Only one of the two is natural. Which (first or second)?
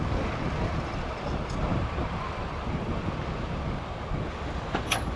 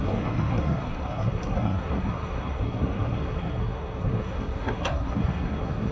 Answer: first